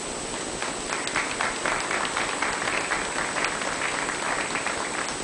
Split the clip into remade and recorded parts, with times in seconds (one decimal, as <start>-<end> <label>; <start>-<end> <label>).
0.0-5.2 recorded